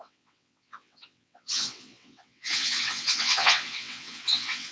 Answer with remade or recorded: remade